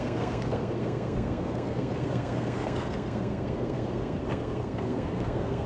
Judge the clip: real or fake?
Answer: fake